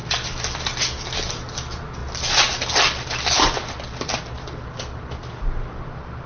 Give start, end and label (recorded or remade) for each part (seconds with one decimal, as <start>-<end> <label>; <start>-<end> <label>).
0.0-6.3 recorded